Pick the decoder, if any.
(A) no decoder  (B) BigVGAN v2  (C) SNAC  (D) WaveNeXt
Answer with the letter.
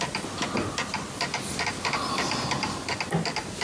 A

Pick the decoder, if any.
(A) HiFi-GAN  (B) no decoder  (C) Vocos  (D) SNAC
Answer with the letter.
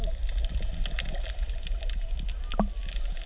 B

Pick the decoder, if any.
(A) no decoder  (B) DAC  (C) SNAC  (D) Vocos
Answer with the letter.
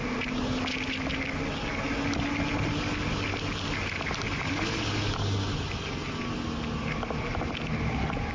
A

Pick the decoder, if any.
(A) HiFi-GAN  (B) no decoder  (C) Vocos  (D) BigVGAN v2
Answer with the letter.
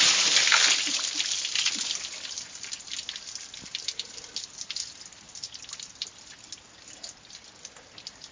B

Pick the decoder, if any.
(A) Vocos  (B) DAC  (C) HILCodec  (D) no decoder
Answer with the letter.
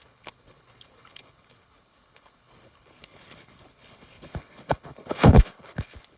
C